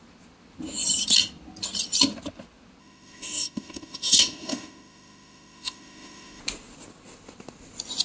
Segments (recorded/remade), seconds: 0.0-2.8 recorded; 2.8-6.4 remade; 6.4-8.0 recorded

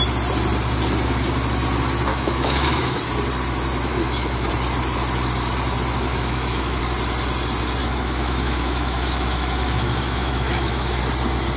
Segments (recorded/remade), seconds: 0.0-2.1 recorded; 2.1-3.0 remade; 3.0-3.9 recorded; 3.9-4.5 remade; 4.5-6.1 recorded; 6.1-6.8 remade; 6.8-7.8 recorded; 7.8-11.0 remade; 11.0-11.6 recorded

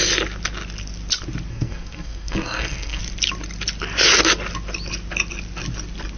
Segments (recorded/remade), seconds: 0.0-1.5 recorded; 1.5-3.0 remade; 3.0-6.2 recorded

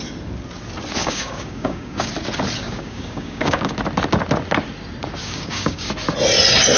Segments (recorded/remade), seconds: 0.0-1.0 recorded; 1.0-2.1 remade; 2.1-2.6 recorded; 2.6-3.7 remade; 3.7-5.2 recorded; 5.2-5.9 remade; 5.9-6.8 recorded

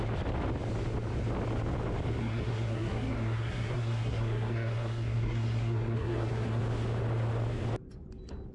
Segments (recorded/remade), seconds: 0.0-2.2 recorded; 2.2-6.6 remade; 6.6-8.5 recorded